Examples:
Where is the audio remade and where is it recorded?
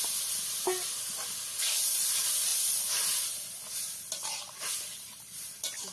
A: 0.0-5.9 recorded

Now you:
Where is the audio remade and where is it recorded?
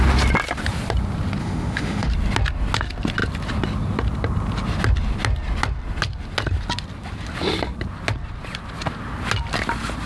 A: 0.0-1.4 recorded; 1.4-2.1 remade; 2.1-10.1 recorded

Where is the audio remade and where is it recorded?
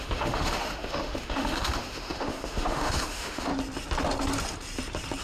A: 0.0-3.5 remade; 3.5-5.2 recorded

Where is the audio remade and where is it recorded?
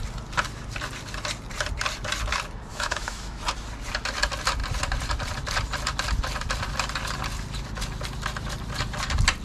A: 0.0-2.7 recorded; 2.7-3.4 remade; 3.4-9.4 recorded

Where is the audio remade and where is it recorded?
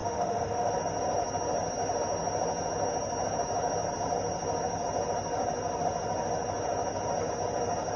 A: 0.0-0.7 remade; 0.7-8.0 recorded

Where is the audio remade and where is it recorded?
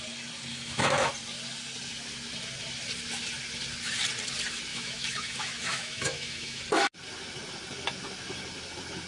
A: 0.0-0.5 recorded; 0.5-1.1 remade; 1.1-4.7 recorded; 4.7-6.6 remade; 6.6-9.1 recorded